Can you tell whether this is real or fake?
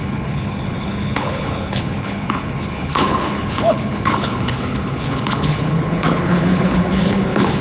fake